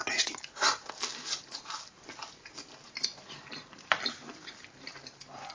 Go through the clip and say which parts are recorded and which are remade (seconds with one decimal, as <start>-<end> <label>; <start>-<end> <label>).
0.0-5.5 recorded